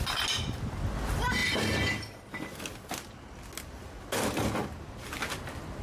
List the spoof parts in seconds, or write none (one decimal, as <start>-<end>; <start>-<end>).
none